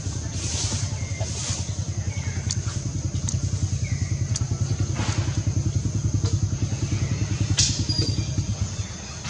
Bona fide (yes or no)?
yes